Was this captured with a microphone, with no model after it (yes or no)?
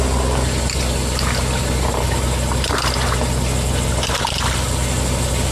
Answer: yes